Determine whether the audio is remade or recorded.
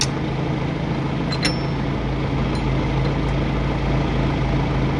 recorded